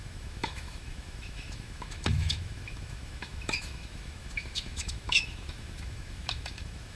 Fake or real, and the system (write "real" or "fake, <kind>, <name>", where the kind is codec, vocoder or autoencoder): fake, autoencoder, DAC-VAE